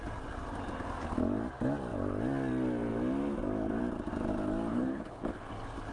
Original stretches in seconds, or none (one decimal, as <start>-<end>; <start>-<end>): 0.0-4.7; 5.5-5.9